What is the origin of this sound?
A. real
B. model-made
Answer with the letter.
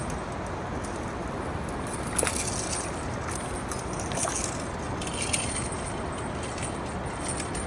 A